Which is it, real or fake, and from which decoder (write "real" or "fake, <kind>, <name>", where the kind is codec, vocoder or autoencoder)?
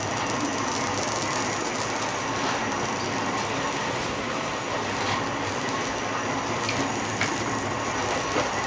real